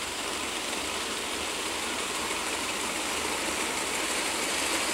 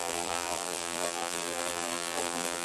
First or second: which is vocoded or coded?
second